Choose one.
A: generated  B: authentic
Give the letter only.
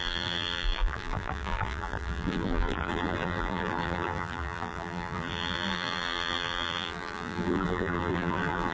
A